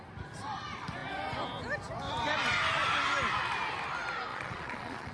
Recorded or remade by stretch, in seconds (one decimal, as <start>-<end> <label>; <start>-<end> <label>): 0.0-4.3 recorded; 4.3-5.1 remade

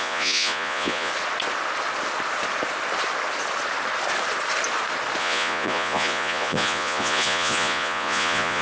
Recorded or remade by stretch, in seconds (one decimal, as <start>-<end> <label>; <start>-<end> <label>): 0.0-1.1 remade; 1.1-5.2 recorded; 5.2-8.6 remade

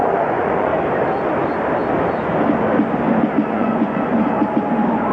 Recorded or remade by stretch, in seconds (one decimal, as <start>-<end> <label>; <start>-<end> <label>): 0.0-0.7 remade; 0.7-3.5 recorded; 3.5-4.1 remade; 4.1-5.1 recorded

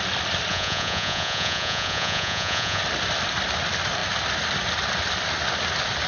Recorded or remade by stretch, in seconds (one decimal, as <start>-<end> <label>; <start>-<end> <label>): 0.0-0.5 recorded; 0.5-2.8 remade; 2.8-6.1 recorded